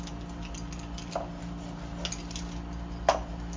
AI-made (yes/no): no